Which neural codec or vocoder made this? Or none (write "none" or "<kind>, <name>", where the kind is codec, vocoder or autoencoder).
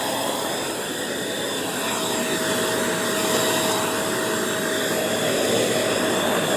none